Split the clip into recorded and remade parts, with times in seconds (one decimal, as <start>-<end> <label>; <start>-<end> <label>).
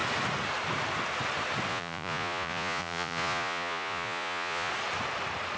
0.0-1.7 recorded; 1.7-4.7 remade; 4.7-5.6 recorded